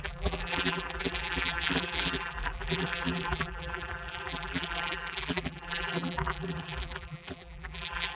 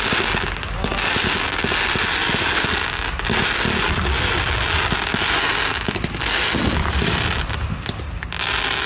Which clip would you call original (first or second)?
second